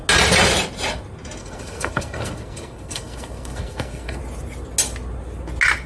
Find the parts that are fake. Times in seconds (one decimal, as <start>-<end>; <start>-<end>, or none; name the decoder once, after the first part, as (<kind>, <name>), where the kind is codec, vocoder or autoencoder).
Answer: 1.4-4.2 (codec, SNAC)